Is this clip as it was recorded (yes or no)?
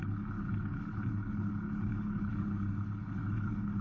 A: no